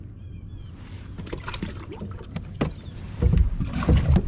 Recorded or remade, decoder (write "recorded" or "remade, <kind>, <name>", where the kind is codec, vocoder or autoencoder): remade, vocoder, BigVGAN v2